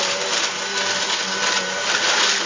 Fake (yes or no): no